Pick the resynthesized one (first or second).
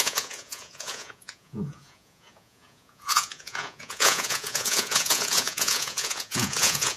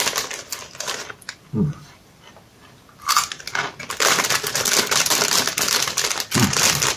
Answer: first